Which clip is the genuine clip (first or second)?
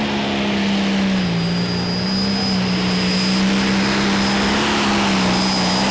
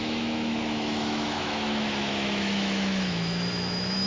first